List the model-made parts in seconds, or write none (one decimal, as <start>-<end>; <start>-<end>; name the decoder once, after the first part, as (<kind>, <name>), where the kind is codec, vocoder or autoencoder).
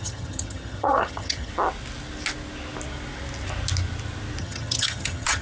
0.0-1.5 (vocoder, HiFi-GAN); 4.4-5.4